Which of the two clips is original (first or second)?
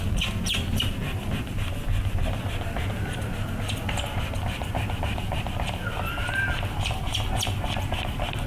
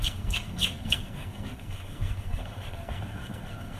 first